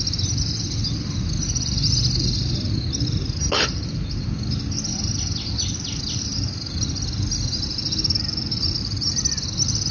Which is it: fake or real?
real